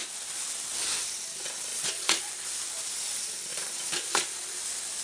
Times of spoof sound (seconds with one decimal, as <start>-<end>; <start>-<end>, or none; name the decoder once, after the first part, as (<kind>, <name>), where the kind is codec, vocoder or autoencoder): 1.7-2.3 (vocoder, Vocos); 3.5-4.2